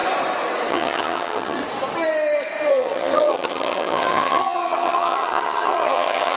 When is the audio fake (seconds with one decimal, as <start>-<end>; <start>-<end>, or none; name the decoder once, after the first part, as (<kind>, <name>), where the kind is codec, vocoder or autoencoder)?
0.7-1.6 (vocoder, HiFi-GAN); 2.7-6.4